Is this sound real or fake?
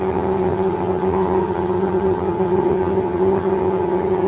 fake